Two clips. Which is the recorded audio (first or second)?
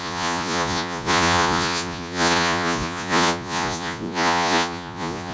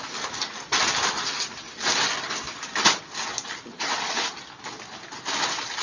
second